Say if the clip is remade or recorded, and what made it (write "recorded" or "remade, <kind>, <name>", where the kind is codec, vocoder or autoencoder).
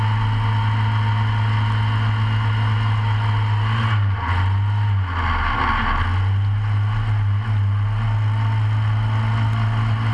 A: recorded